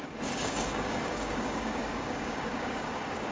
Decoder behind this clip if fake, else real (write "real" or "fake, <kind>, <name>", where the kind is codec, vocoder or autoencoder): fake, codec, DAC